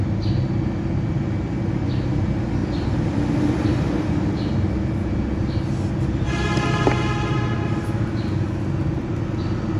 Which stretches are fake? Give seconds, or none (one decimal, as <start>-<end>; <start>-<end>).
2.6-4.1

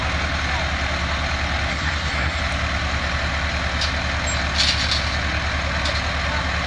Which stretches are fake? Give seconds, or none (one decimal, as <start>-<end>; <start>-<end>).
1.7-2.4

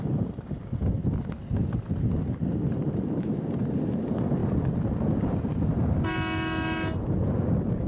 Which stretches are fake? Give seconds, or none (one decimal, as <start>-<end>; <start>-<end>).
0.0-1.0; 4.0-4.4

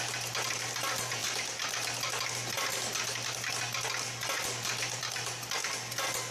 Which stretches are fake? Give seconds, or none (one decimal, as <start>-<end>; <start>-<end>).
none